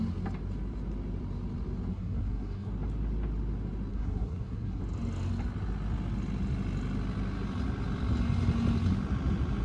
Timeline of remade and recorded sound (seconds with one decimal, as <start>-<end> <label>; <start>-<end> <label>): 0.0-1.9 recorded; 1.9-2.7 remade; 2.7-3.9 recorded; 3.9-4.8 remade; 4.8-9.6 recorded